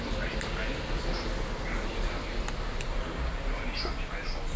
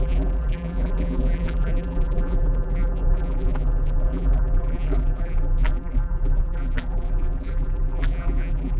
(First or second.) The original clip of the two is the first